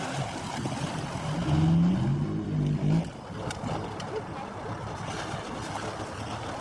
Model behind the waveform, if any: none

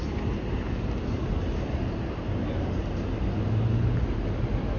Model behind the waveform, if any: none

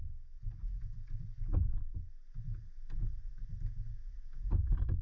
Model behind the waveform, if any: none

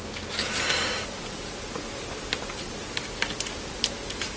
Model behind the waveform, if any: none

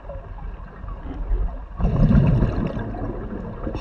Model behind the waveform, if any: none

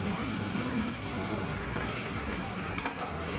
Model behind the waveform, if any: codec, SNAC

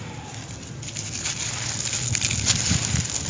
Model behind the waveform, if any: none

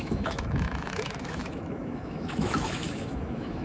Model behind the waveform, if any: autoencoder, DAC-VAE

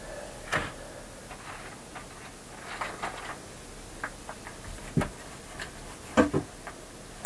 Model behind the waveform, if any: none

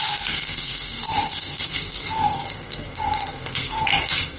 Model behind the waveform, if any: codec, SNAC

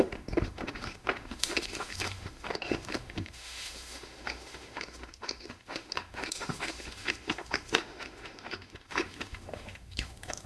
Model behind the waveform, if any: autoencoder, DAC-VAE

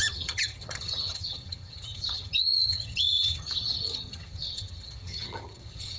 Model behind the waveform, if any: vocoder, HiFi-GAN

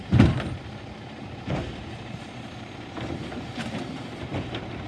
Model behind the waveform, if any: vocoder, BigVGAN v2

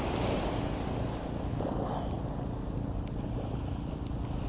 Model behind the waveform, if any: none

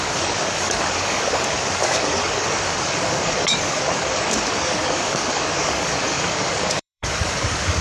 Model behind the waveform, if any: codec, DAC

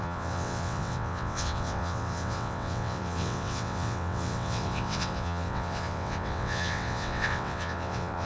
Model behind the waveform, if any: vocoder, WaveNeXt